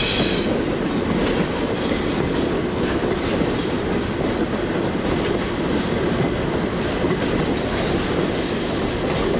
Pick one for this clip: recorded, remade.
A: recorded